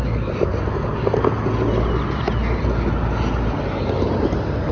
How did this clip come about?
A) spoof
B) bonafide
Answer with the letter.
B